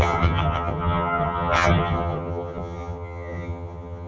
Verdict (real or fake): fake